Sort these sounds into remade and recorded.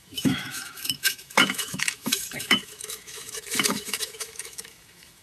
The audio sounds remade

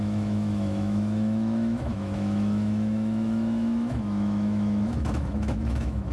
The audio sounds remade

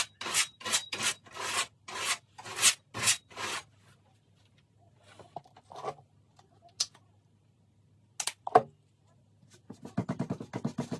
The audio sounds recorded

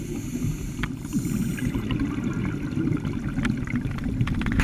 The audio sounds recorded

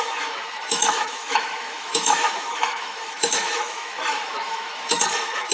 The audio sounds remade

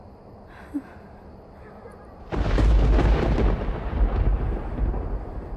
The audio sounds recorded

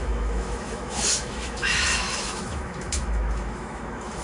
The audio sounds remade